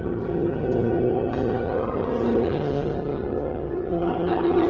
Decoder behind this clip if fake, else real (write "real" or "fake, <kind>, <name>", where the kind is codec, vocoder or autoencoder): fake, vocoder, HiFi-GAN